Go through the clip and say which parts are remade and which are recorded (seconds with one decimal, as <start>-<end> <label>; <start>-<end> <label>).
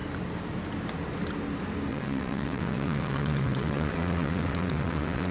0.0-1.9 recorded; 1.9-5.3 remade